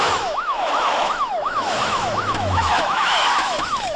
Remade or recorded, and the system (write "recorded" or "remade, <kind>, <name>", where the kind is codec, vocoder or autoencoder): remade, autoencoder, DAC-VAE